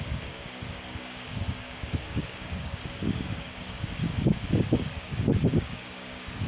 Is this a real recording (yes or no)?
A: no